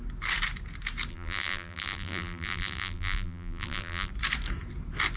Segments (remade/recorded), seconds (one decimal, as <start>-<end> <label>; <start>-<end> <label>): 0.0-1.1 recorded; 1.1-4.1 remade; 4.1-5.2 recorded